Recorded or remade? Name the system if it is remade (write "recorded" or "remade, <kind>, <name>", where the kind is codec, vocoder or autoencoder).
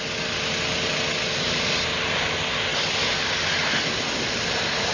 recorded